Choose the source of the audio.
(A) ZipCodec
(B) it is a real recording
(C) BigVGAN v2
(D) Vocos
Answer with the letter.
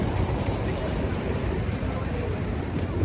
C